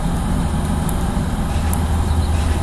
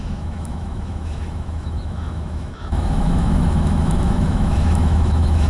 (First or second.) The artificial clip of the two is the second